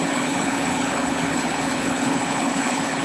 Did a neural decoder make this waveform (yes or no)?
yes